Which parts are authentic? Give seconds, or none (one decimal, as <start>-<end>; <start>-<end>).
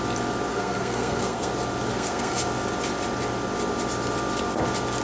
0.0-0.5; 1.5-1.9; 2.4-5.0